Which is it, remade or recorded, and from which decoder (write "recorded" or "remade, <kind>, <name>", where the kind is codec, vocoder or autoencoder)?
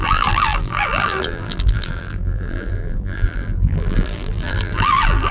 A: remade, vocoder, BigVGAN v2